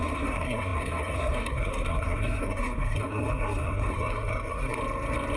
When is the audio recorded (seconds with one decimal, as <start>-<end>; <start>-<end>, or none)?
4.8-5.4